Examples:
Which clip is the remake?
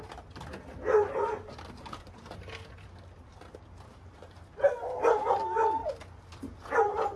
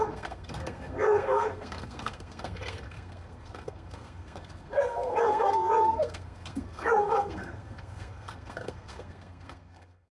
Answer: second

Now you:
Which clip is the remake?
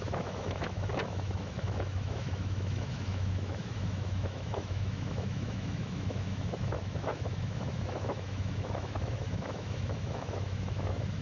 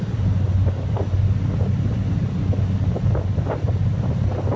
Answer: first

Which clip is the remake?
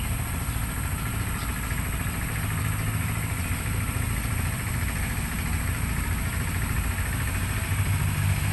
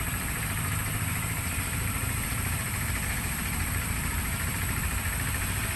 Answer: second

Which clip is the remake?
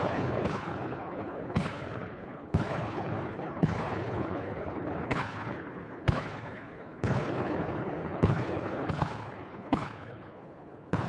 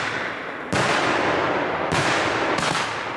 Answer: first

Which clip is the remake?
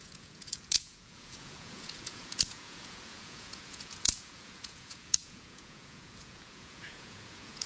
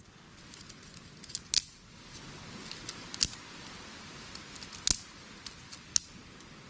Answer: first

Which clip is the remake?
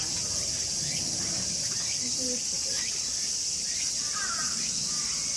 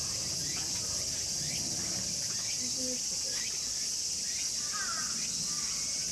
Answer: first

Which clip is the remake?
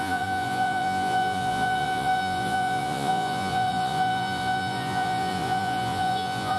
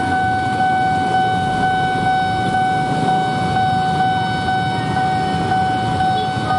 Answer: first